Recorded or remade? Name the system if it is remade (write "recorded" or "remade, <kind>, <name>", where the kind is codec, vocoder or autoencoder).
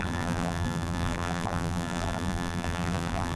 remade, vocoder, BigVGAN v2